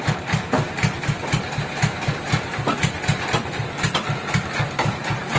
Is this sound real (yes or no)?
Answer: yes